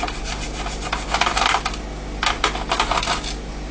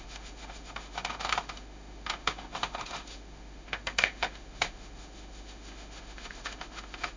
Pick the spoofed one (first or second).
second